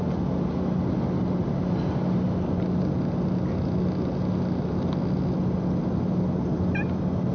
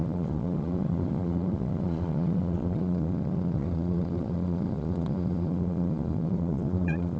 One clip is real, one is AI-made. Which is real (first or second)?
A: first